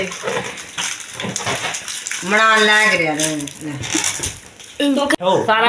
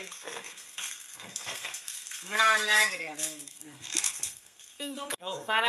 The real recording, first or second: first